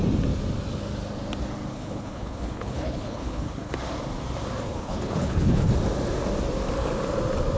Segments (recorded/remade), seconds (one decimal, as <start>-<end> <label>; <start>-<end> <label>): 0.0-1.7 recorded; 1.7-3.7 remade; 3.7-4.7 recorded; 4.7-5.7 remade; 5.7-7.6 recorded